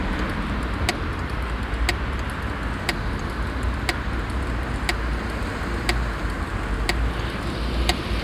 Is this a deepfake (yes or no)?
no